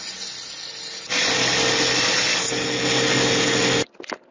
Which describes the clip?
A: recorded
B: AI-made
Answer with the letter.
A